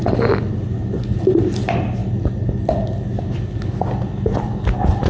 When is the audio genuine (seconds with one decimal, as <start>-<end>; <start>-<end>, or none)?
0.0-5.1